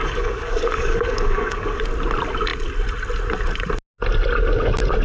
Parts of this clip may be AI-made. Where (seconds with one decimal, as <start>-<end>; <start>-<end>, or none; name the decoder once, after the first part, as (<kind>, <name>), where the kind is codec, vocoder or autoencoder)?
0.0-1.8 (codec, DAC)